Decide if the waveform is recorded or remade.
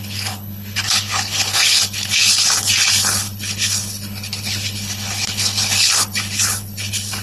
remade